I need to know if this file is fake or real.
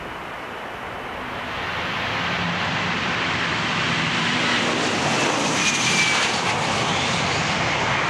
real